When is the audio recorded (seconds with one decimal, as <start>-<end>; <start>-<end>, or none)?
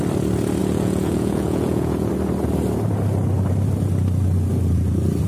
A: 0.0-0.6; 2.1-5.3